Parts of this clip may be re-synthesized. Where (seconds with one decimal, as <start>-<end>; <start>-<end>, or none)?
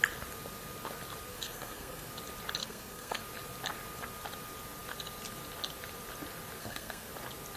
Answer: 1.3-2.1; 2.6-3.2; 6.6-7.1